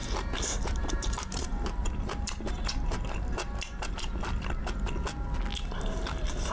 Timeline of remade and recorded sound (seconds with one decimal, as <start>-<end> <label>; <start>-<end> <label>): 0.0-3.9 remade; 3.9-6.5 recorded